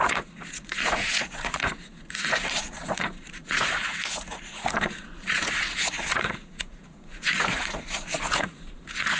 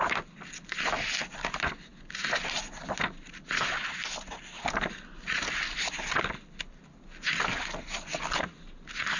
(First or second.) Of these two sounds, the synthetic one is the first